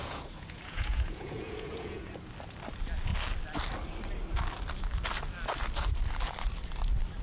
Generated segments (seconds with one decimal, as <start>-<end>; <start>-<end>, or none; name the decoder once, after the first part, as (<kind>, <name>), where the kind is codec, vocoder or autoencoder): 0.0-2.1 (vocoder, Vocos)